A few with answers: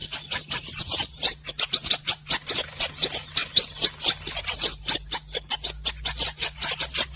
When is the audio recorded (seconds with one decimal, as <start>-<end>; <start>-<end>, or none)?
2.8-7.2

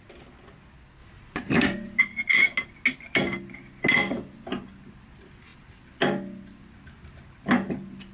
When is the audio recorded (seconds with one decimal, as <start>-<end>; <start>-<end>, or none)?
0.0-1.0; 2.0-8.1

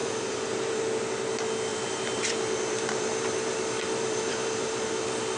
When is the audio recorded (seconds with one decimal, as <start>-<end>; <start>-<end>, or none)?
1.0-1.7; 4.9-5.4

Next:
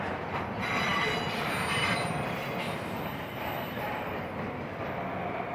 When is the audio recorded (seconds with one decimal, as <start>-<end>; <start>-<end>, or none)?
0.0-5.5

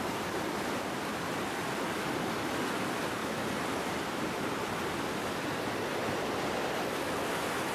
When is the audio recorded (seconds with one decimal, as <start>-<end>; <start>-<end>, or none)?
0.0-3.2; 4.7-7.7

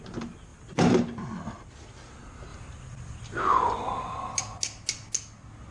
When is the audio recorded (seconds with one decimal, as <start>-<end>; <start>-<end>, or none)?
0.0-0.5; 1.0-2.5; 3.4-5.7

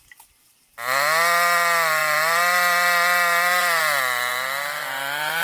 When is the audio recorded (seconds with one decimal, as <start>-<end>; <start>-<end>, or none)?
0.0-2.0; 3.8-5.4